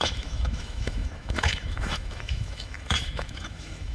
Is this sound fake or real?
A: fake